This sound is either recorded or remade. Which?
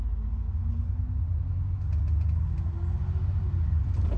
recorded